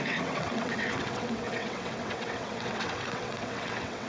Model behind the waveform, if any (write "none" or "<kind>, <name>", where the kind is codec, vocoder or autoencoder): vocoder, WaveNeXt